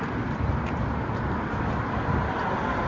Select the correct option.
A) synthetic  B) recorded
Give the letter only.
B